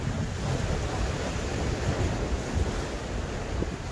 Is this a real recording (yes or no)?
yes